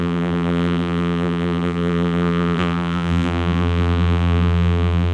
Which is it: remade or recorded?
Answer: remade